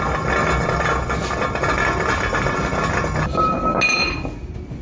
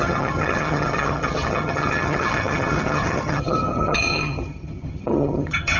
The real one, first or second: first